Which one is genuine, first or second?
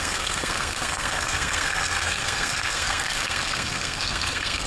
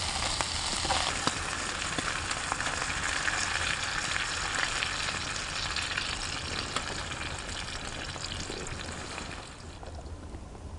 second